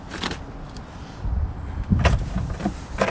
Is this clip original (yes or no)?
yes